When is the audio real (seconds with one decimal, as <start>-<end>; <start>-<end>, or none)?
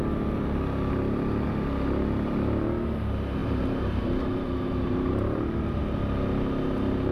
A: 0.0-3.4; 5.8-7.1